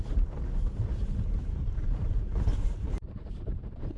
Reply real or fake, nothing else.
fake